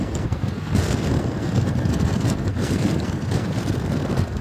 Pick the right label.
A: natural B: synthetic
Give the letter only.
B